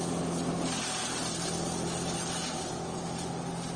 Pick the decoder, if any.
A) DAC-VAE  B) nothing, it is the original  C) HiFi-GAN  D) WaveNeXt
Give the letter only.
B